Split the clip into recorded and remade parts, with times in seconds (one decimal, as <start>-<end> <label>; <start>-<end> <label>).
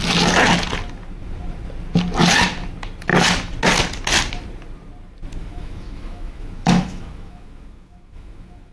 0.0-5.4 recorded; 5.4-8.7 remade